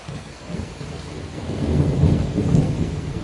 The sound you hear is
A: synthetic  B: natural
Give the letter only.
A